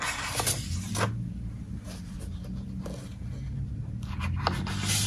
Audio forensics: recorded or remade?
recorded